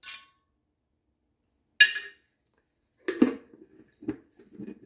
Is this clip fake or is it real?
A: real